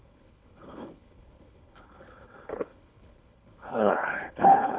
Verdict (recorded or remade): remade